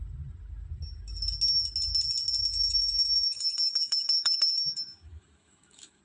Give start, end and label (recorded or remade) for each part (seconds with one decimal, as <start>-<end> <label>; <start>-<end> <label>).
0.0-2.5 recorded; 2.5-6.0 remade